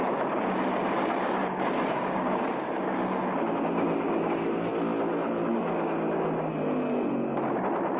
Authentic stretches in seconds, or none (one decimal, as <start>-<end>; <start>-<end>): 4.7-5.5; 6.5-8.0